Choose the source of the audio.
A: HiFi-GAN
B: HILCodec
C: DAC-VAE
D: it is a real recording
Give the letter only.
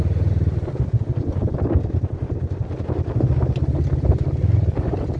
D